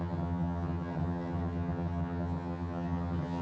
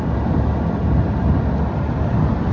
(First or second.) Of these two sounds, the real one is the second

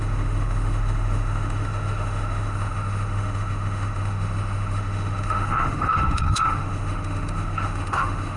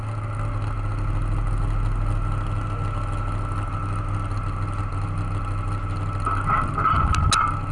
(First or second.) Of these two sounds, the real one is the second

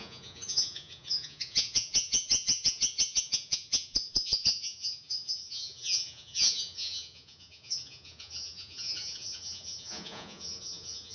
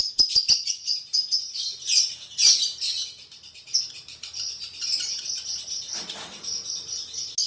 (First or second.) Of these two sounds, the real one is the second